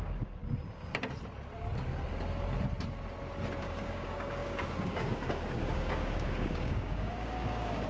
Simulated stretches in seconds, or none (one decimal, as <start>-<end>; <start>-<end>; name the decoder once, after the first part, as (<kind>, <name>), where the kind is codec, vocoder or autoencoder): 0.0-0.4 (codec, DAC); 3.6-7.9